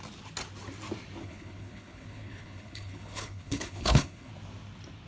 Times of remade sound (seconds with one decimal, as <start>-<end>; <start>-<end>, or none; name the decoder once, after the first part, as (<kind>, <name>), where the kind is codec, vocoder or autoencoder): 1.2-4.3 (codec, HILCodec)